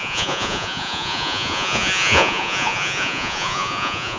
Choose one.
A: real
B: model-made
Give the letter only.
B